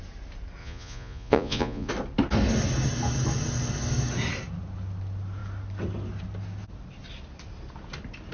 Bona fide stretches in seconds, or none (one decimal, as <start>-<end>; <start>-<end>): 0.0-0.6; 1.9-8.3